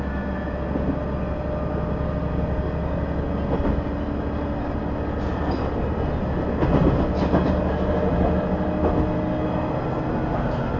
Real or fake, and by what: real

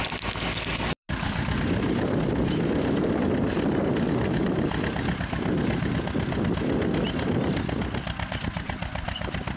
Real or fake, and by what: real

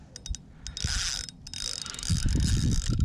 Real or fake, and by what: real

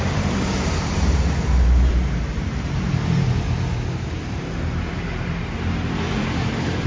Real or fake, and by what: fake, vocoder, BigVGAN v2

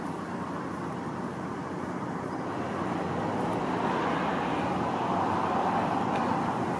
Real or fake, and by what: real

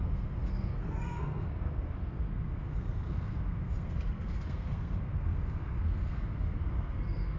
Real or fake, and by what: fake, codec, SNAC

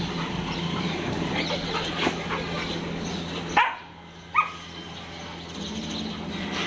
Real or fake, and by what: real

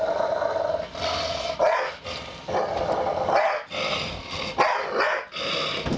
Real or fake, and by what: real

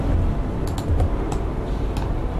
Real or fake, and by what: real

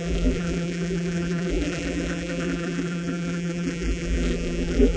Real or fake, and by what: fake, vocoder, BigVGAN v2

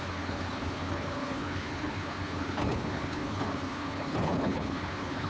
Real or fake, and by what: fake, codec, HILCodec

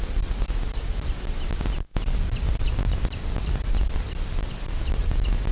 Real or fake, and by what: real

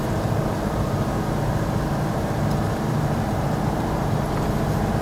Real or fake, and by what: fake, vocoder, BigVGAN v2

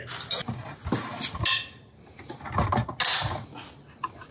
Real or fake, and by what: real